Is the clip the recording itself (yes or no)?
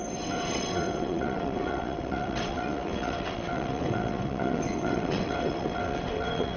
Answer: no